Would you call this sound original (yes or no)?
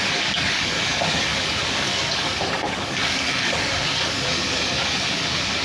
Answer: no